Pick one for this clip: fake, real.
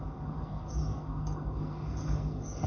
fake